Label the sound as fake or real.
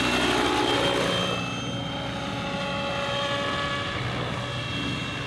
real